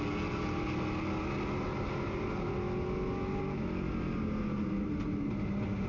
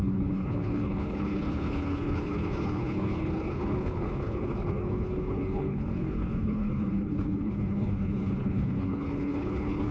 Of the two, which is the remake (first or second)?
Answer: second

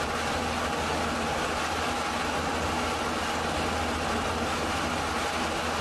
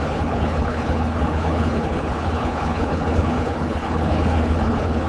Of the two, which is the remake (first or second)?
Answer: second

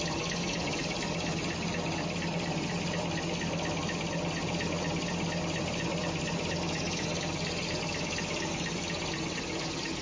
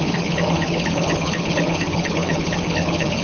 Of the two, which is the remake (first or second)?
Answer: second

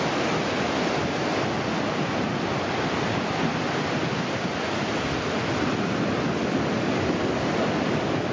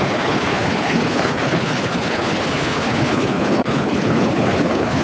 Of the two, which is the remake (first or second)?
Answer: second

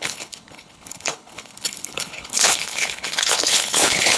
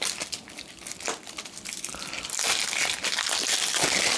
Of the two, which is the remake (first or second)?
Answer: first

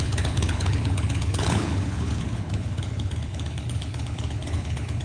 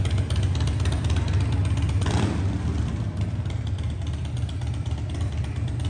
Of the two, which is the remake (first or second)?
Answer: first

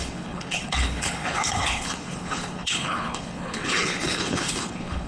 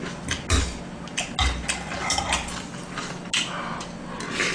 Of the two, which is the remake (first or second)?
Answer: first